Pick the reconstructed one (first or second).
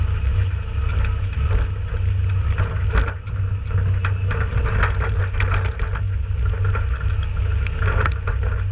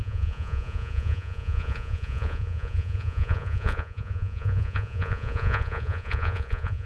second